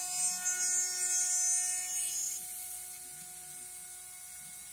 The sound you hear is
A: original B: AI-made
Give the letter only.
A